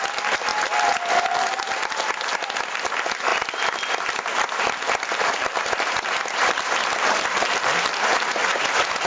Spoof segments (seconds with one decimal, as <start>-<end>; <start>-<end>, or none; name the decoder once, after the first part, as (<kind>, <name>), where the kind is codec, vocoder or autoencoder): 0.5-1.5 (vocoder, BigVGAN v2); 3.3-8.4